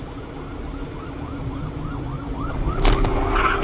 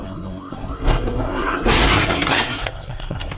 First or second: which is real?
first